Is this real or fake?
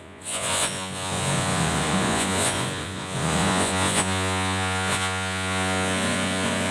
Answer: fake